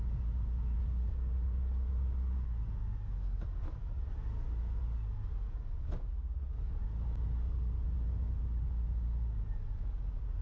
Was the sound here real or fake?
real